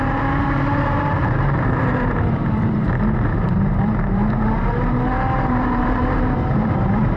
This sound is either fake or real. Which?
fake